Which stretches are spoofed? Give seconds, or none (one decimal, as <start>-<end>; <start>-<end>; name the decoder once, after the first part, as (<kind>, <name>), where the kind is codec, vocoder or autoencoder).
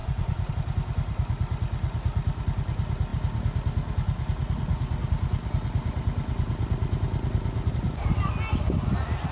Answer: 0.0-0.5 (vocoder, Vocos)